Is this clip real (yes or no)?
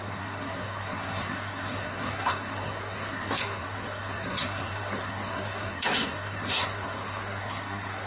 no